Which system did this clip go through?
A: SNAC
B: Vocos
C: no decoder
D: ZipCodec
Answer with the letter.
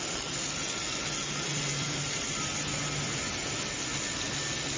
C